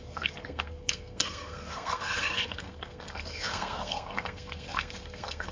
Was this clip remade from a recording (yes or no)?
yes